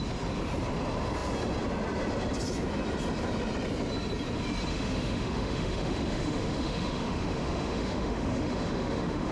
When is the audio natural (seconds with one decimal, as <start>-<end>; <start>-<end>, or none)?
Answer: 0.0-4.7